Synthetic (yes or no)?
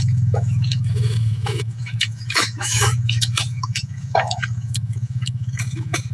yes